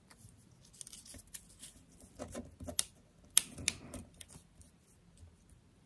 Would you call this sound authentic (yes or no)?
yes